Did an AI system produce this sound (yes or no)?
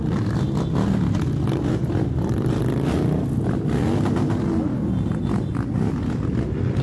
no